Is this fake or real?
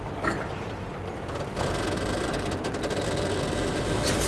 real